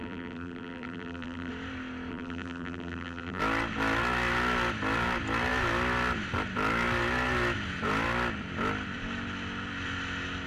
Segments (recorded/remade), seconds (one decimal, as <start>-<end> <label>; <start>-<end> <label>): 0.0-1.5 remade; 1.5-2.1 recorded; 2.1-3.4 remade; 3.4-10.5 recorded